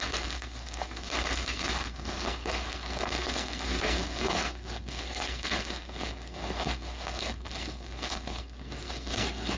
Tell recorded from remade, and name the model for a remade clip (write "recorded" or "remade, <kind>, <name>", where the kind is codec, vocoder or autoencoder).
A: remade, codec, SNAC